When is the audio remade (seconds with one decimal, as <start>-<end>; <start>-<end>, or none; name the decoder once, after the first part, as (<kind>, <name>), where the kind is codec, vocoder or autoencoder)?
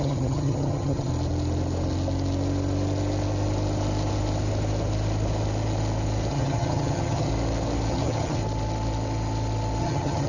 0.0-1.1 (vocoder, HiFi-GAN); 6.3-7.3; 7.9-8.4; 9.8-10.3